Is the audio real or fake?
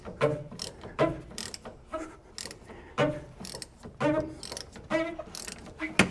real